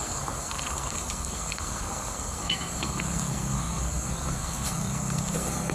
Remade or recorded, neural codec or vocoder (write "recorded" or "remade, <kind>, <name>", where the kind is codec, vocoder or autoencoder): remade, codec, SNAC